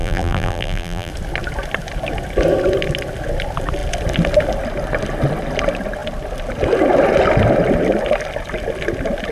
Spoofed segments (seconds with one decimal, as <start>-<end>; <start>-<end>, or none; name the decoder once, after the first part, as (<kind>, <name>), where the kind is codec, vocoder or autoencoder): 0.0-1.1 (vocoder, BigVGAN v2)